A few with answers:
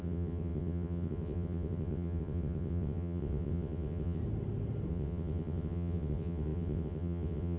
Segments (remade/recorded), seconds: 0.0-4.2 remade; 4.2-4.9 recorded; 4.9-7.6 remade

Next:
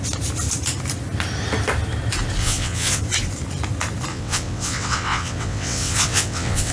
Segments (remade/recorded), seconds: 0.0-2.4 recorded; 2.4-3.0 remade; 3.0-4.1 recorded; 4.1-6.7 remade